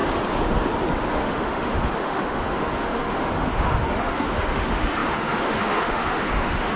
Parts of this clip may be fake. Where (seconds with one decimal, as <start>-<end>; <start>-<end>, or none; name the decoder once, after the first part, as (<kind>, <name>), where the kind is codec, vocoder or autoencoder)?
1.1-6.8 (autoencoder, DAC-VAE)